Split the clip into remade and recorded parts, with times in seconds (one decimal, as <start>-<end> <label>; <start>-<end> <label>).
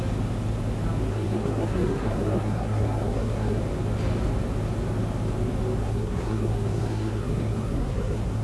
0.0-1.1 recorded; 1.1-3.6 remade; 3.6-5.8 recorded; 5.8-8.4 remade